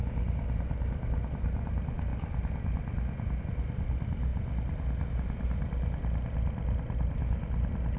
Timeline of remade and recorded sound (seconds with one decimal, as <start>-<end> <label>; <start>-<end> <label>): 0.0-8.0 recorded